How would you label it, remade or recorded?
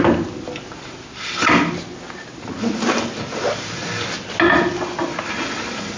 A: recorded